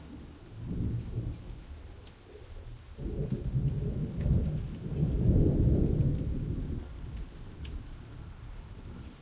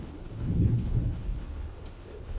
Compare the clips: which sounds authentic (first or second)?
first